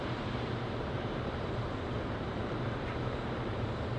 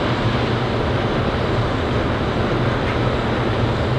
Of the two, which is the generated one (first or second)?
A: first